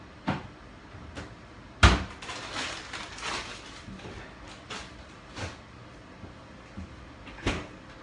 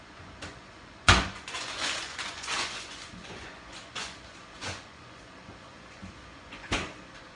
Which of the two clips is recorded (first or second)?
first